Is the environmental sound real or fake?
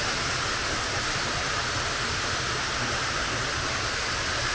real